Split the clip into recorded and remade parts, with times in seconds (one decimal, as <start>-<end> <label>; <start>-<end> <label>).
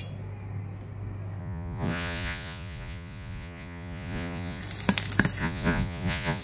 0.0-1.4 recorded; 1.4-4.6 remade; 4.6-5.4 recorded; 5.4-6.4 remade